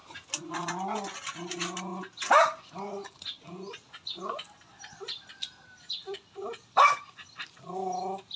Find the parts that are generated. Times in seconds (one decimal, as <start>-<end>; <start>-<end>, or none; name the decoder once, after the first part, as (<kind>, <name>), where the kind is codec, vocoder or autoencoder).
none